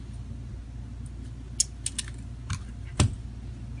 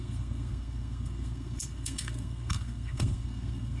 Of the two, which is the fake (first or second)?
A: second